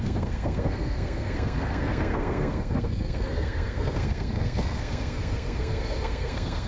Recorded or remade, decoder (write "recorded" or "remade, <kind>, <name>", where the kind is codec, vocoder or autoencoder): remade, codec, SNAC